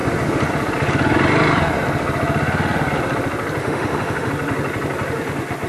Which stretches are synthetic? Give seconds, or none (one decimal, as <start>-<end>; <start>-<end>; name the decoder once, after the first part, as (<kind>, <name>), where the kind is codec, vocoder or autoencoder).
3.6-4.3 (autoencoder, DAC-VAE)